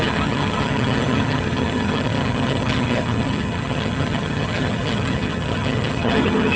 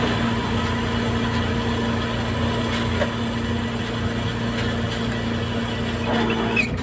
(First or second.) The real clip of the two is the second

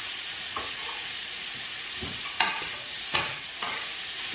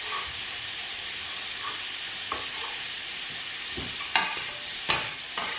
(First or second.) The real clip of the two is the second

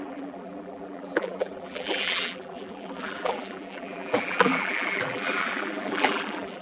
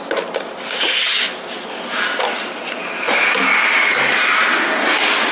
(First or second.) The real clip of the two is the second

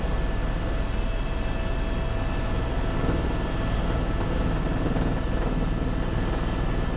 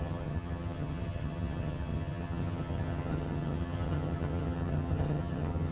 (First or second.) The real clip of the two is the first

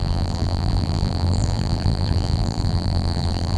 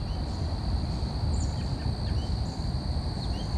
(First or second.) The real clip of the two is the second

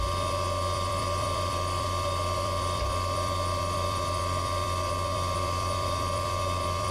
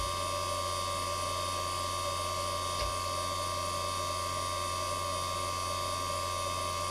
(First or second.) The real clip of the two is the second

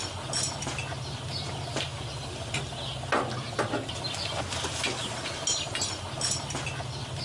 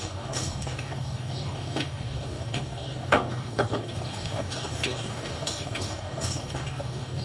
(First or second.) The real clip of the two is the first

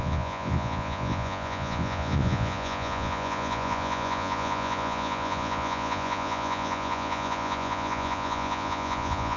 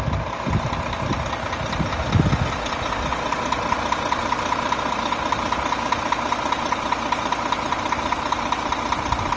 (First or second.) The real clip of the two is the second